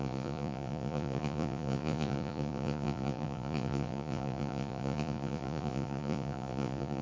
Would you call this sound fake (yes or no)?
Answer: yes